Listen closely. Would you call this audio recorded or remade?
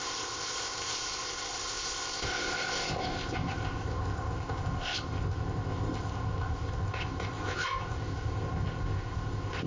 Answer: remade